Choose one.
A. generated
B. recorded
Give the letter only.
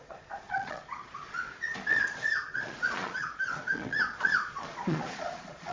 A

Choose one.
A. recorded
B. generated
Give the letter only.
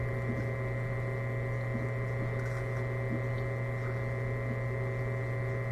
A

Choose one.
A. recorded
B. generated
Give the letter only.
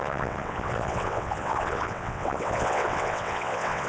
B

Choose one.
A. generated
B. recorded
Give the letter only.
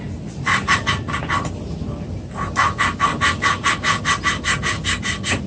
B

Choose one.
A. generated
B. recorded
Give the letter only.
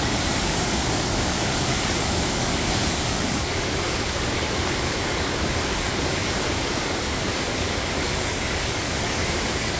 A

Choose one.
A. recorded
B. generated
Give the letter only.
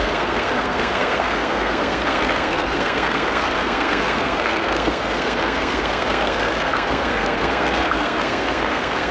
B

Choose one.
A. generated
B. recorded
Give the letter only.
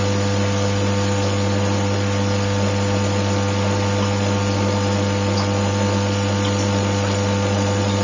B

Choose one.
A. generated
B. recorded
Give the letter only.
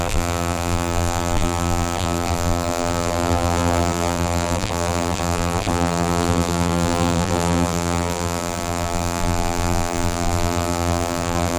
A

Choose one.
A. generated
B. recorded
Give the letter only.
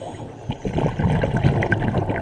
B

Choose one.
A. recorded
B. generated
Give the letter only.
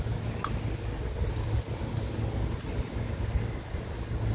A